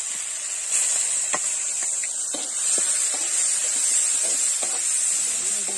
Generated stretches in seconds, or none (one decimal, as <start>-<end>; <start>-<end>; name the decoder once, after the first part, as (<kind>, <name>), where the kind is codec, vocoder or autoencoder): none

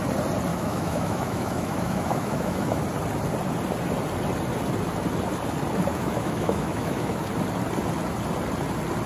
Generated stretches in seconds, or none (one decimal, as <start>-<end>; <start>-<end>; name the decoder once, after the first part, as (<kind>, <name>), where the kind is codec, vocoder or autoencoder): 0.5-2.8 (autoencoder, DAC-VAE); 5.9-7.3